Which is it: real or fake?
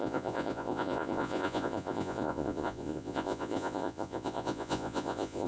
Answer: fake